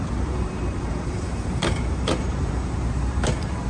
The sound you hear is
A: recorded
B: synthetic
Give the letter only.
B